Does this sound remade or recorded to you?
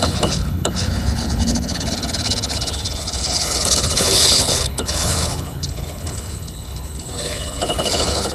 remade